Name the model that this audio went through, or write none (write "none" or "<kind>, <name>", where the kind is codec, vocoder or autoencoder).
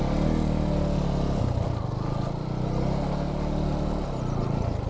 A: none